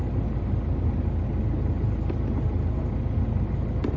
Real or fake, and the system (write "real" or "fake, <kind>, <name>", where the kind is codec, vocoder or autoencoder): real